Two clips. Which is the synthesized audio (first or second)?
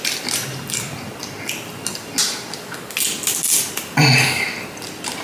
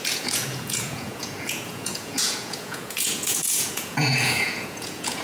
second